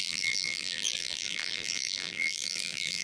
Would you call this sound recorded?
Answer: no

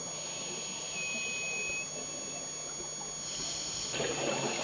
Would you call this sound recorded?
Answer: yes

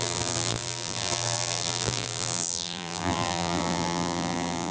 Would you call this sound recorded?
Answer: no